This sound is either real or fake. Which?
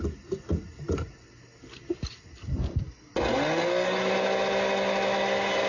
real